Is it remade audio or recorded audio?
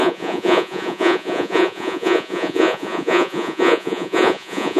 remade